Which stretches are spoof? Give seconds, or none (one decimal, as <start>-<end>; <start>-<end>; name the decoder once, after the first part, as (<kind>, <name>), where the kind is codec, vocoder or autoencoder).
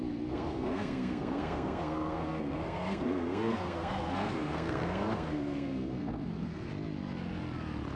0.0-6.7 (codec, SNAC)